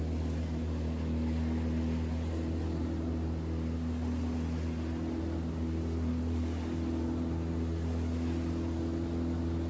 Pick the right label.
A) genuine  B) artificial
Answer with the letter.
A